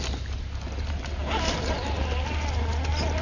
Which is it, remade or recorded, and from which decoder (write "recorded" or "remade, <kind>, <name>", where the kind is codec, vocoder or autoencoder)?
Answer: recorded